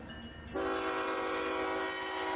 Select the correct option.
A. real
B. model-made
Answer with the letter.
A